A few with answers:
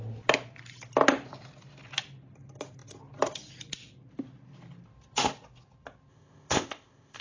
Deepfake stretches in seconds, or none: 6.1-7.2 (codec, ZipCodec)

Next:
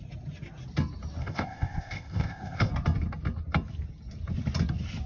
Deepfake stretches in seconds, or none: 1.2-2.7 (codec, ZipCodec)

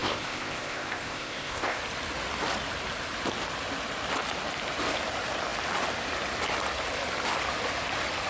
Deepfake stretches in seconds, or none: 0.0-1.8 (codec, ZipCodec)